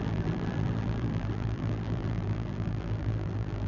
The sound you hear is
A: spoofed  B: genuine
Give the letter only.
A